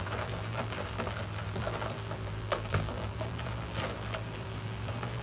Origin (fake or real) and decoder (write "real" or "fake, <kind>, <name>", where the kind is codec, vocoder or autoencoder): fake, vocoder, BigVGAN v2